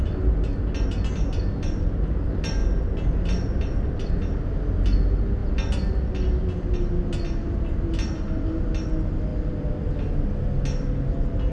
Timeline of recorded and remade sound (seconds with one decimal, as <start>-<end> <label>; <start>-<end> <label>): 0.0-11.5 recorded